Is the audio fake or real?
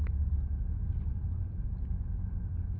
real